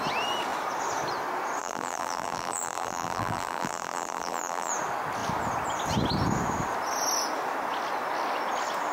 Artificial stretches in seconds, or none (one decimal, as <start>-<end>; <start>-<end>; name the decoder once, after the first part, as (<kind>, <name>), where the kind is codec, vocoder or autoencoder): 1.6-4.7 (vocoder, BigVGAN v2)